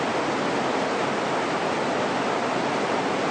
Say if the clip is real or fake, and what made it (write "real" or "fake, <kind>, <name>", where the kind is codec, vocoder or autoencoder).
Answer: real